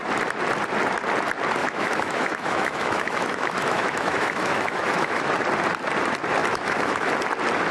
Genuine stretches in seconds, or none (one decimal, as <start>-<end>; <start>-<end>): 0.0-1.6; 5.2-6.4; 7.1-7.7